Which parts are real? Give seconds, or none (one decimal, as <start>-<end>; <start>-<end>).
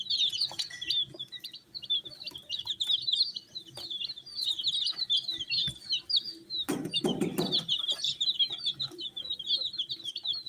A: 0.0-10.5